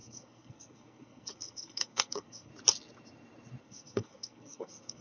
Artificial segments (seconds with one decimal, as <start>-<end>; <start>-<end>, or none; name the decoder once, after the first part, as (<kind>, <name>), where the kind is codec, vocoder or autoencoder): 0.0-2.5 (codec, SNAC); 3.6-5.0